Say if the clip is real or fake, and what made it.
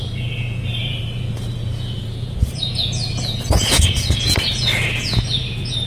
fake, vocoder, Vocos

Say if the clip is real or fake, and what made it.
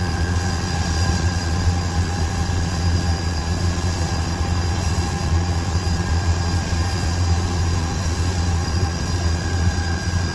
fake, vocoder, Vocos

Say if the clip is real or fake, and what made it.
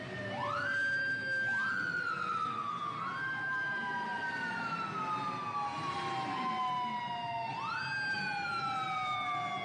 real